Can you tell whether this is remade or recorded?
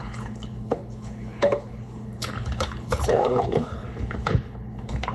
remade